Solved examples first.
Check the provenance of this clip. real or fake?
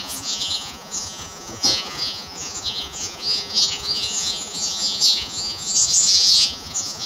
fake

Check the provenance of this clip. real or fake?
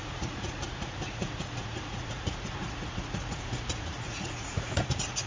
fake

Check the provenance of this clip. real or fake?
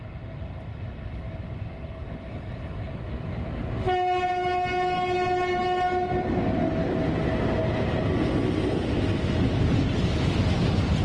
real